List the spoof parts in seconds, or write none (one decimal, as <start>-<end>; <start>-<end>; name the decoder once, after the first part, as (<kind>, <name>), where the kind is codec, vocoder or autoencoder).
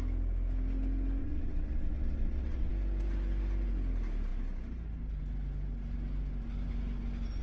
1.2-2.7 (vocoder, WaveNeXt)